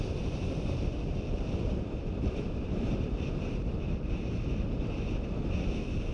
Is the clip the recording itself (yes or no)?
no